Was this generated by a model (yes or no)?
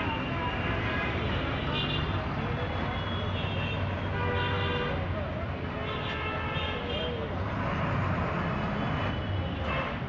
no